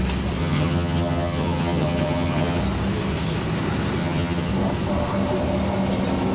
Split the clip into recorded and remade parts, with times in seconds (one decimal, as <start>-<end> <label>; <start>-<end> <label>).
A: 0.0-0.4 recorded; 0.4-2.6 remade; 2.6-4.0 recorded; 4.0-4.5 remade; 4.5-6.3 recorded